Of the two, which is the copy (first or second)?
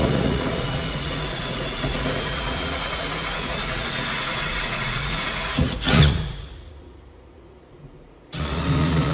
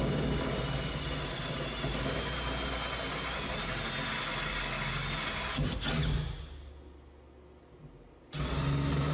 first